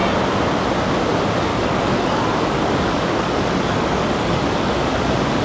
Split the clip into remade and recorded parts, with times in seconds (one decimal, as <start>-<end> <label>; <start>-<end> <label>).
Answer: 0.0-1.5 recorded; 1.5-4.7 remade; 4.7-5.4 recorded